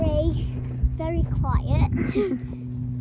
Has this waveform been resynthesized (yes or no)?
no